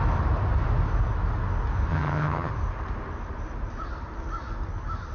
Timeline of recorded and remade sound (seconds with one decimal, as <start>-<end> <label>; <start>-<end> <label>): 0.0-1.9 recorded; 1.9-2.5 remade; 2.5-5.1 recorded